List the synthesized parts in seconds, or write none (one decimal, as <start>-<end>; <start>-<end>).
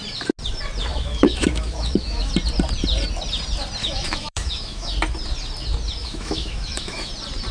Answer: 0.9-2.3; 3.8-4.9; 6.0-7.1